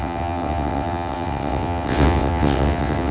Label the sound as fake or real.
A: fake